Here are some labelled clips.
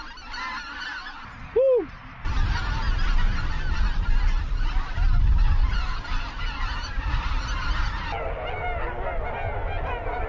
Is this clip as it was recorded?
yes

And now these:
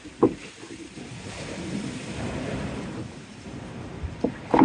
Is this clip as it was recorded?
yes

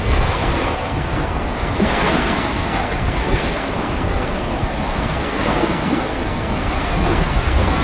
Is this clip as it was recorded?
no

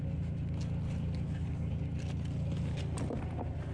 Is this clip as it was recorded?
yes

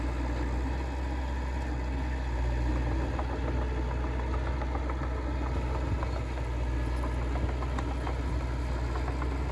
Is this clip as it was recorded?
yes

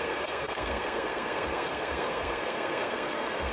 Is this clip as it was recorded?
no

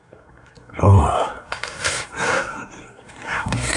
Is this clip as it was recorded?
no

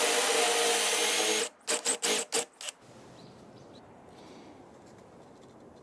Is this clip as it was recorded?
yes